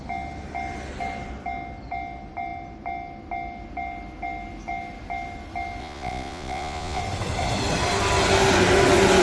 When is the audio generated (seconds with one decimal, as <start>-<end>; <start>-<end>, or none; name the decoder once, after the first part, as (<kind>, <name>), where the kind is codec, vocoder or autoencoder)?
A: 5.8-7.0 (vocoder, Vocos)